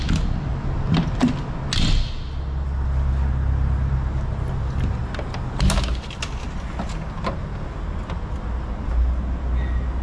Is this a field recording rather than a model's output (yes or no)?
yes